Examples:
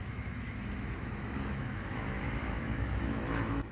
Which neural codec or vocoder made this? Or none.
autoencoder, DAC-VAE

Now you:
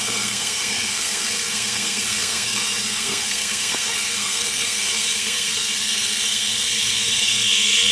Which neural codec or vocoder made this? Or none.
codec, SNAC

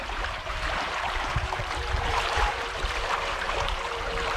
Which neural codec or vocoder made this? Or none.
vocoder, BigVGAN v2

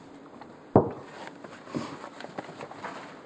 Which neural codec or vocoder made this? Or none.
none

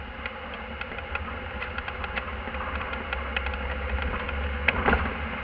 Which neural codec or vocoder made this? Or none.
none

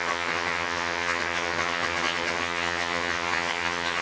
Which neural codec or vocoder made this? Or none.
vocoder, HiFi-GAN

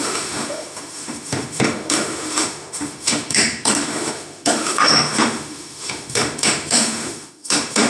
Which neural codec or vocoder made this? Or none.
autoencoder, DAC-VAE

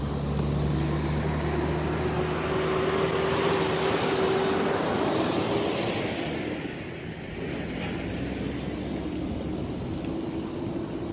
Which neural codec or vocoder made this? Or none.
none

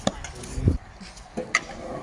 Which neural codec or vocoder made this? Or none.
none